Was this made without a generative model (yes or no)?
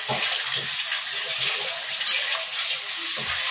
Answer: yes